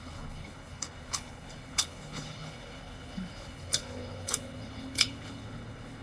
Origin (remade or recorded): remade